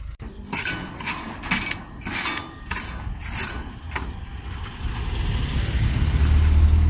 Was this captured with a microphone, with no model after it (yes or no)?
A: yes